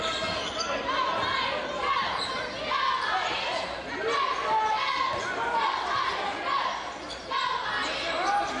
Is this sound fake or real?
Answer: real